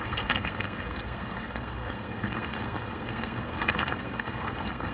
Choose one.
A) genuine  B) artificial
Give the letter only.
B